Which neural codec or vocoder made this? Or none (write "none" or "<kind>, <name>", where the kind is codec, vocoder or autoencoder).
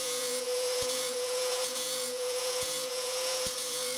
vocoder, Vocos